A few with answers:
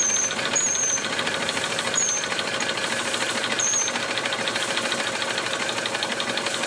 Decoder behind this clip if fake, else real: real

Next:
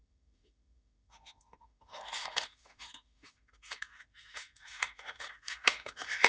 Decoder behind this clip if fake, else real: fake, autoencoder, DAC-VAE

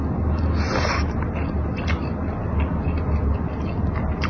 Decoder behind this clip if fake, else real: real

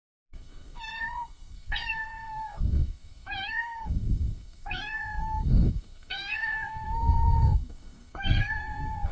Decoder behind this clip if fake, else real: fake, codec, SNAC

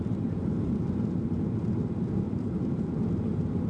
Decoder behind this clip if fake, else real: real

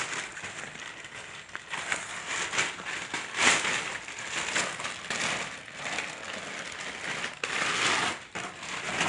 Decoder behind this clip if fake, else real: real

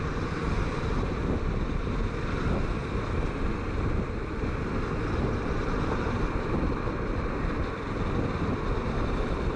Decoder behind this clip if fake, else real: real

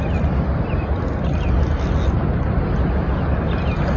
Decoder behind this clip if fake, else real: real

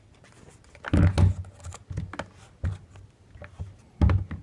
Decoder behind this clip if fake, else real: real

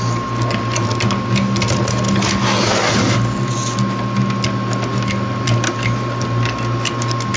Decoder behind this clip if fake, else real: real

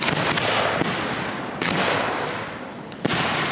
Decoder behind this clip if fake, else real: real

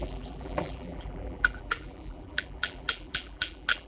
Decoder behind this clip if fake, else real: fake, vocoder, BigVGAN v2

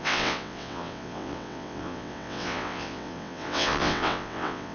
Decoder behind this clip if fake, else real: fake, vocoder, WaveNeXt